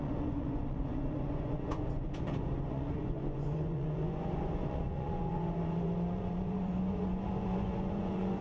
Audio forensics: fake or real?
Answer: fake